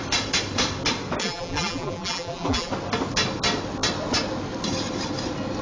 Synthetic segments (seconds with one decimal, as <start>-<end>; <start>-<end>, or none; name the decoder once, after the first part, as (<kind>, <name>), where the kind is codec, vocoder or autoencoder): 1.2-2.7 (vocoder, BigVGAN v2)

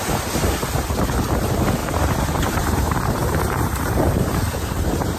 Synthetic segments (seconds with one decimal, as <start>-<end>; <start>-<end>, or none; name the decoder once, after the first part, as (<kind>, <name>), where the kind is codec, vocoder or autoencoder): 1.8-5.2 (vocoder, BigVGAN v2)

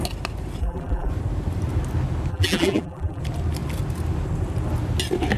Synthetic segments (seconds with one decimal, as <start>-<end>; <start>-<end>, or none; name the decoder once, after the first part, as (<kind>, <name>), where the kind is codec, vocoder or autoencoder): 0.6-1.1 (vocoder, BigVGAN v2); 2.3-3.2

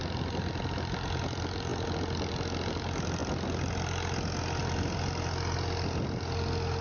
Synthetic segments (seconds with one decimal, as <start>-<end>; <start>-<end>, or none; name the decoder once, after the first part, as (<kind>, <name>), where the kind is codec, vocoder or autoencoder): none

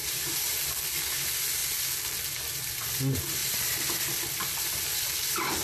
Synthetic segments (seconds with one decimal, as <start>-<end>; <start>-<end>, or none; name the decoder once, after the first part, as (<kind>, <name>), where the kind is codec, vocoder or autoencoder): 0.0-0.7 (vocoder, BigVGAN v2)

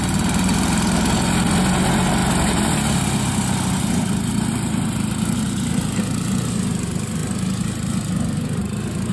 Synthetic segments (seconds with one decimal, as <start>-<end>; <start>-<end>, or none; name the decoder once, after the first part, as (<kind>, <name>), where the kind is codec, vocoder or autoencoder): none

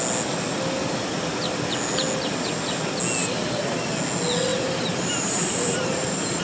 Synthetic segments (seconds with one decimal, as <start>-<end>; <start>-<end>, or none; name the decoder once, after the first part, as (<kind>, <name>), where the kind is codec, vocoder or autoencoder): 3.2-3.8 (vocoder, BigVGAN v2); 4.5-6.4